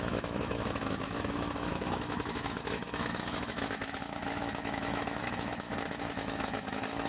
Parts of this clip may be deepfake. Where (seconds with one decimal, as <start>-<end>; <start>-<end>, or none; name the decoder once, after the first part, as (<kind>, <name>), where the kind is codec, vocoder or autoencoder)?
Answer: 0.0-7.1 (autoencoder, DAC-VAE)